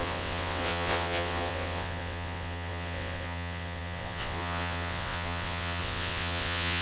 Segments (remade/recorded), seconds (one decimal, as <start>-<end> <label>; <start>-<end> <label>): 0.0-6.8 remade